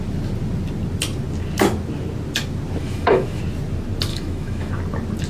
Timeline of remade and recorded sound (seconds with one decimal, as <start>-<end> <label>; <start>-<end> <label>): 0.0-2.8 recorded; 2.8-3.4 remade; 3.4-4.1 recorded; 4.1-4.7 remade; 4.7-5.3 recorded